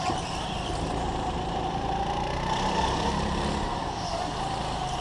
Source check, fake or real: real